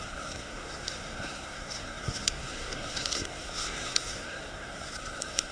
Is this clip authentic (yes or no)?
no